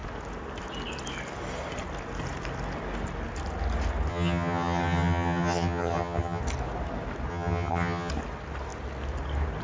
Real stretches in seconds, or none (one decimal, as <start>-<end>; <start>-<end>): 0.0-4.1; 6.4-7.3; 8.1-9.6